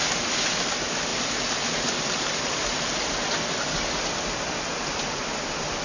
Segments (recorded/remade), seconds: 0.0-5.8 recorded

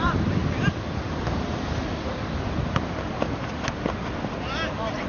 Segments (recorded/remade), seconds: 0.0-5.1 recorded